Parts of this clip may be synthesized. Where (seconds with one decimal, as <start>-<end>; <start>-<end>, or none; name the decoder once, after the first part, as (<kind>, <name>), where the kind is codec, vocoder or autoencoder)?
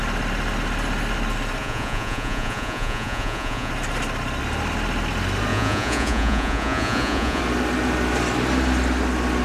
1.6-3.7 (vocoder, Vocos); 5.5-7.4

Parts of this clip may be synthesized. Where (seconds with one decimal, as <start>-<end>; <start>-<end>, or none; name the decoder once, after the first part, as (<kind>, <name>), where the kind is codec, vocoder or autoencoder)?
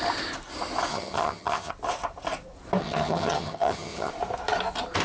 0.9-1.7 (vocoder, HiFi-GAN); 2.8-4.1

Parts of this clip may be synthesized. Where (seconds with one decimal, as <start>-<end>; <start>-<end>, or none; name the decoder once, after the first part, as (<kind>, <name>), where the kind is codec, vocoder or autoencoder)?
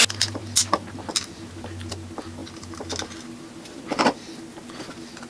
none